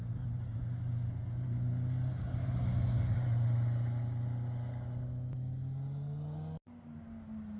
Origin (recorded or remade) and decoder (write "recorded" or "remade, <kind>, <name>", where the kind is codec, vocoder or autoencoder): recorded